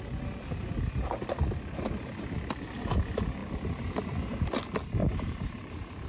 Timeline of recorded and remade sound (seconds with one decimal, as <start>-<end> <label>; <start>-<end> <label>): 0.0-5.0 recorded; 5.0-6.1 remade